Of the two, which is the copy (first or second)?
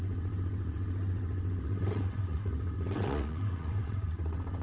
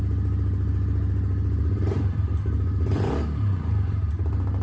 first